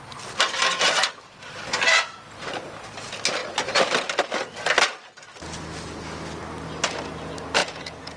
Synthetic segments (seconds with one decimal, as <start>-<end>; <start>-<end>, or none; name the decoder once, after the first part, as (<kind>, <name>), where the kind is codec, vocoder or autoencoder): 7.6-8.2 (vocoder, Vocos)